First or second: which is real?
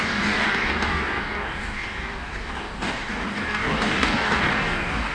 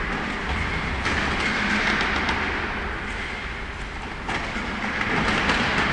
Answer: second